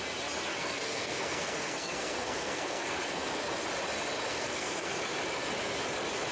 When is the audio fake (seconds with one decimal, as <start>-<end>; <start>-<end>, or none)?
0.5-3.3; 4.3-5.0